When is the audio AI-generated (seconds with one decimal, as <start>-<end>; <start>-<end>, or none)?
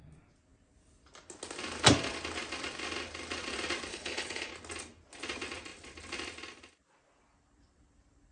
3.9-4.5